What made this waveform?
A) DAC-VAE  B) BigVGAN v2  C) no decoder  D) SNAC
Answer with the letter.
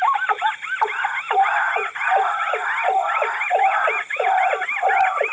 B